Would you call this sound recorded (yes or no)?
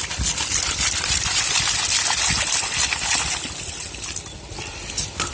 yes